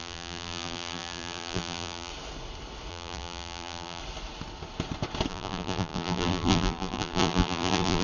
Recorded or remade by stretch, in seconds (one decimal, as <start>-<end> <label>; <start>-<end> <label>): 0.0-2.1 remade; 2.1-2.9 recorded; 2.9-4.0 remade; 4.0-5.3 recorded; 5.3-8.0 remade